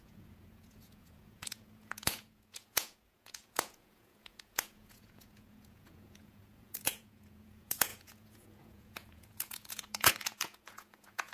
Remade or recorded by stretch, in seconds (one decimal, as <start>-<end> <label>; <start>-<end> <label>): 0.0-11.3 remade